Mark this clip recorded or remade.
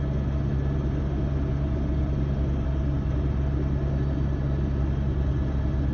recorded